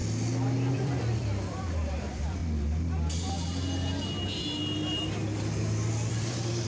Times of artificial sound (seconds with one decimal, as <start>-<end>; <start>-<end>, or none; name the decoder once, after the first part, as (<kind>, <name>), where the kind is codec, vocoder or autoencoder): 0.7-2.4 (vocoder, BigVGAN v2); 6.1-6.7